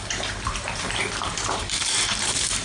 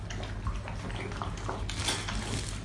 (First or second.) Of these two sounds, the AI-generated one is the first